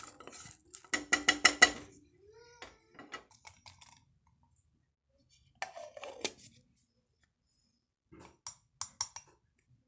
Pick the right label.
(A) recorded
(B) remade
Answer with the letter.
A